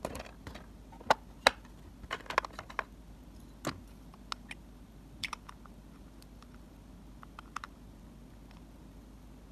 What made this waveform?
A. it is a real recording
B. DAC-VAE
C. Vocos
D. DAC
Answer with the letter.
A